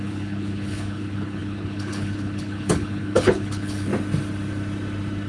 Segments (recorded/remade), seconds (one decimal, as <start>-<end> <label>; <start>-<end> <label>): 0.0-3.9 remade; 3.9-5.3 recorded